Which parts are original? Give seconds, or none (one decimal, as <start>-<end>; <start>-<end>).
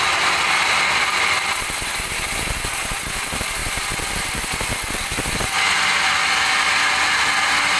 0.0-7.8